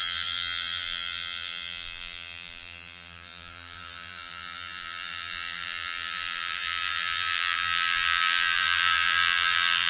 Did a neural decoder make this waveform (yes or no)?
yes